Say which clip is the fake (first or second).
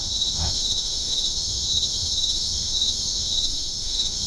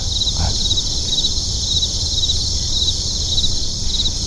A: first